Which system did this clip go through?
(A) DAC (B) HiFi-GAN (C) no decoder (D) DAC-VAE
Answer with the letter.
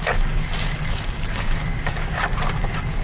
A